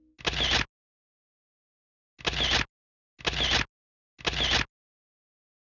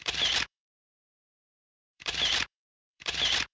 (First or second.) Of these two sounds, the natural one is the first